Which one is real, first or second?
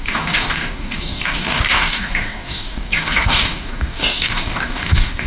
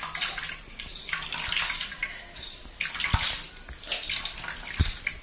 second